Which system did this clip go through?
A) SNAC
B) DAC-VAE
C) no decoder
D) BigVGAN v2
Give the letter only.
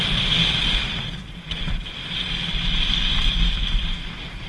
D